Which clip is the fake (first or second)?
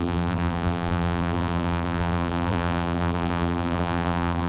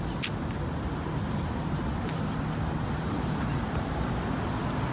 first